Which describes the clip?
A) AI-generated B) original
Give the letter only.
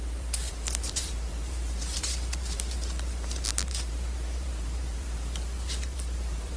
A